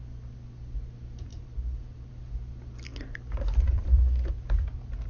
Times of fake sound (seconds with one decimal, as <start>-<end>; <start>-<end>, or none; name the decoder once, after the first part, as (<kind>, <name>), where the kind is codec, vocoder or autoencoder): 1.3-2.1 (vocoder, BigVGAN v2); 2.9-4.3